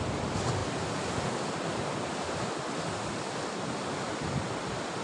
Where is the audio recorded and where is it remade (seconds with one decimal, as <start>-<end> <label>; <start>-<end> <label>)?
0.0-5.0 recorded